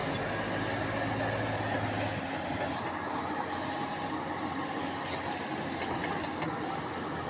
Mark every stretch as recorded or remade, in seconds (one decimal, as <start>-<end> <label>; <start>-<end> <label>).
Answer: 0.0-7.3 recorded